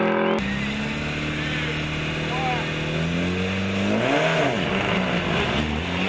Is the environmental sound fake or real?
real